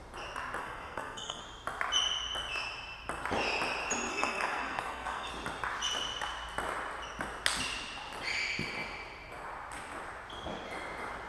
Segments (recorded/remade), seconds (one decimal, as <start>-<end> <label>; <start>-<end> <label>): 0.0-0.6 recorded; 0.6-1.4 remade; 1.4-4.1 recorded; 4.1-5.3 remade; 5.3-11.3 recorded